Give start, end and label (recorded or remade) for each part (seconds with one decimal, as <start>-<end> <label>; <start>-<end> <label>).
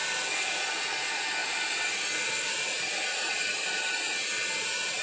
0.0-0.7 remade; 0.7-1.4 recorded; 1.4-3.9 remade; 3.9-5.0 recorded